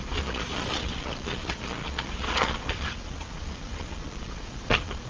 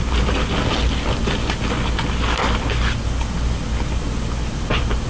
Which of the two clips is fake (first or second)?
first